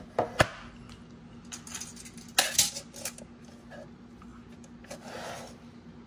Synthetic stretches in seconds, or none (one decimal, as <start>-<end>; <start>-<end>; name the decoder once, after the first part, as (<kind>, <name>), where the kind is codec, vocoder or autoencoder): none